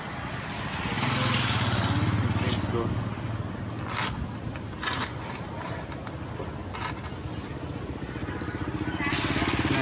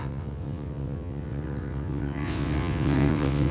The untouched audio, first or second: first